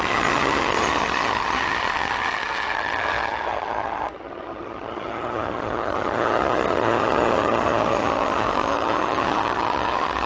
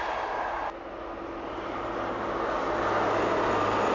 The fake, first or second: first